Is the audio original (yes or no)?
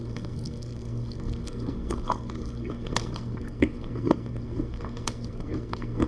no